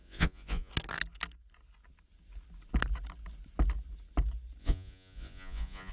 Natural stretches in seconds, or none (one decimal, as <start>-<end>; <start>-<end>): 0.7-4.6